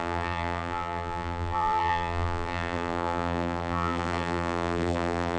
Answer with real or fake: fake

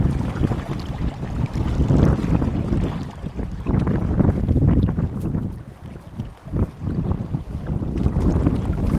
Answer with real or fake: real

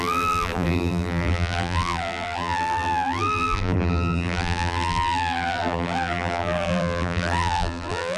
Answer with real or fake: fake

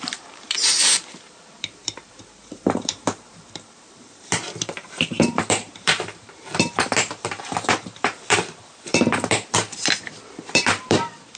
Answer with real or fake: fake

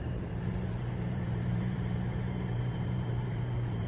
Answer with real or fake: fake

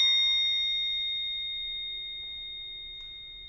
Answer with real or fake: real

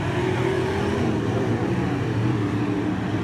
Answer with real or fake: real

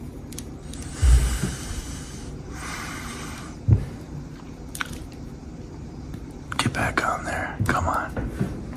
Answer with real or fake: fake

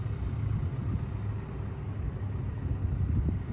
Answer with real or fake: real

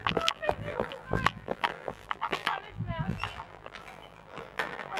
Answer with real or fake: fake